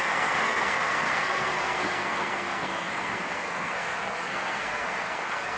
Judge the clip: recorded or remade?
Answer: remade